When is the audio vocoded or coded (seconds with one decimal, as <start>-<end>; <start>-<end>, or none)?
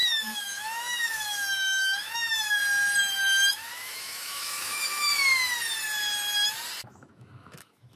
0.0-2.6; 3.5-5.1; 6.8-8.0